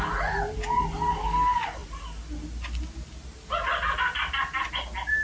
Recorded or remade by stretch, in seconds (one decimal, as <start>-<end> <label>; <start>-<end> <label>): 0.0-5.2 recorded

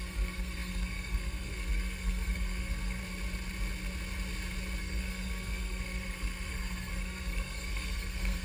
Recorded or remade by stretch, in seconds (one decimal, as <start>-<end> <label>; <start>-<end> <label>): 0.0-3.0 remade; 3.0-4.8 recorded; 4.8-8.4 remade

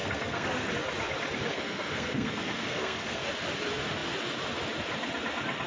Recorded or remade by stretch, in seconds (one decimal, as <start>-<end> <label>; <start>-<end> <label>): 0.0-0.7 remade; 0.7-1.5 recorded; 1.5-3.2 remade; 3.2-5.7 recorded

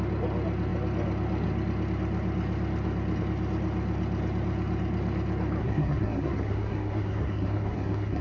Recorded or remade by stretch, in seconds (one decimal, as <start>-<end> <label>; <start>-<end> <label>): 0.0-5.6 recorded; 5.6-8.2 remade

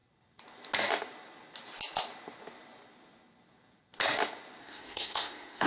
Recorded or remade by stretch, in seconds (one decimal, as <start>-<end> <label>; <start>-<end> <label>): 0.0-4.6 recorded; 4.6-5.7 remade

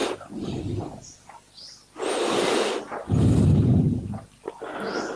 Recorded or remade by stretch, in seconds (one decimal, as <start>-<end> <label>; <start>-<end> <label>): 0.0-5.2 recorded

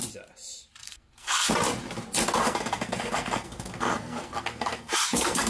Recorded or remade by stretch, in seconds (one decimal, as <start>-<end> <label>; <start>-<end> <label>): 0.0-0.8 recorded; 0.8-1.5 remade; 1.5-2.4 recorded; 2.4-5.5 remade